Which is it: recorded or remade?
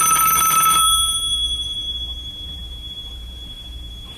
remade